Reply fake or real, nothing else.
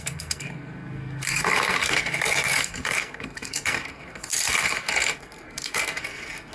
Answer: fake